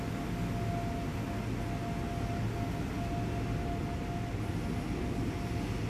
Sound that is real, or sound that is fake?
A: real